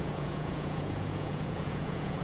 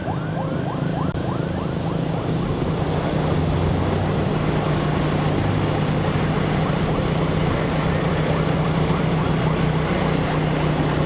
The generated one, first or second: first